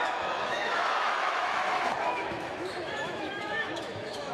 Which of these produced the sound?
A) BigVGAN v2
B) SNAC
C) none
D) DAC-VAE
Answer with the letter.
D